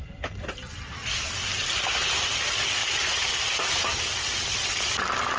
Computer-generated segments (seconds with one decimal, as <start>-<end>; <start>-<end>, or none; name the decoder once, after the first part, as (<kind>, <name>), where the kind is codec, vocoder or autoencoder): none